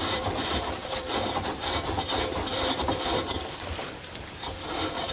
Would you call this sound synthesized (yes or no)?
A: yes